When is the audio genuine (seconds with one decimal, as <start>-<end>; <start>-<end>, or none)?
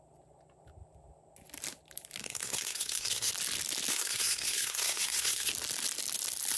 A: 0.0-2.2; 3.3-3.9; 5.5-6.6